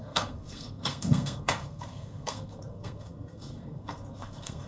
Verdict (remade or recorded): remade